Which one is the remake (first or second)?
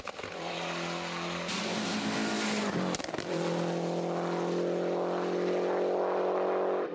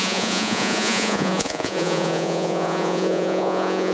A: second